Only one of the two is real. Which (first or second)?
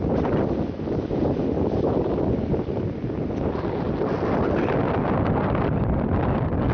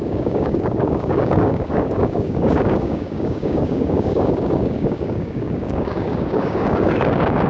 first